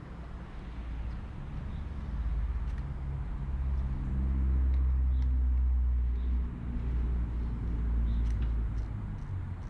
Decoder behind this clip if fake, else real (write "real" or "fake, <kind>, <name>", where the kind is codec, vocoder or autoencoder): real